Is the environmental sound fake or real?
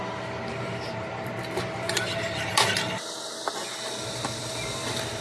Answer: real